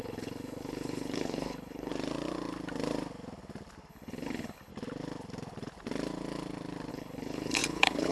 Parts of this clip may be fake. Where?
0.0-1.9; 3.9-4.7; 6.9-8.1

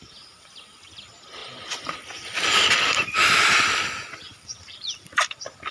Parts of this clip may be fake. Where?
1.4-3.5; 4.3-5.2

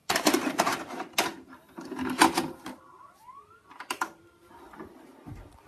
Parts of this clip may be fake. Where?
0.0-0.9

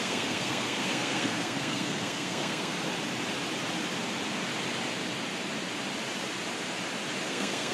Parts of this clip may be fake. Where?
0.0-2.7; 7.3-7.7

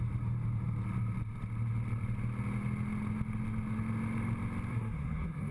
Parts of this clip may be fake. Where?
4.7-5.5

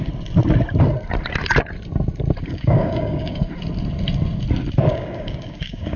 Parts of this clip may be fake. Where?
2.4-3.5; 4.9-6.0

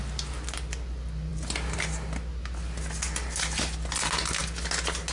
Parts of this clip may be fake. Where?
none